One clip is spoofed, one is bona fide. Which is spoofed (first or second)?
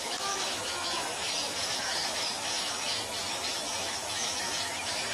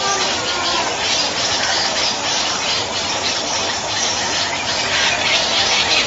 first